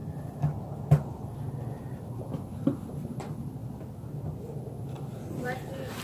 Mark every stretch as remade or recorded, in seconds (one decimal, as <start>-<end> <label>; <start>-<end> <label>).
0.0-6.0 recorded